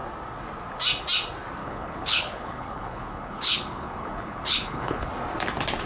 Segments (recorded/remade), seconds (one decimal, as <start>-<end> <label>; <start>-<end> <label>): 0.0-1.6 recorded; 1.6-5.1 remade; 5.1-5.9 recorded